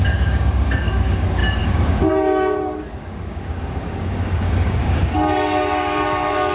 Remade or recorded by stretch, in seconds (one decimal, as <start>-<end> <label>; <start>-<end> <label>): 0.0-6.5 remade